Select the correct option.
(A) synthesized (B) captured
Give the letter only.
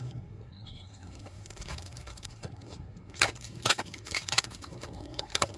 A